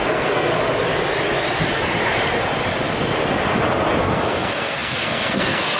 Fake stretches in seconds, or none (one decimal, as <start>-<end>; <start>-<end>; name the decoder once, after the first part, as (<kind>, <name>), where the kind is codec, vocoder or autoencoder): 0.0-0.5 (codec, SNAC); 4.0-5.8